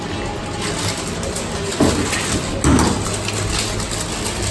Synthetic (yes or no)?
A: no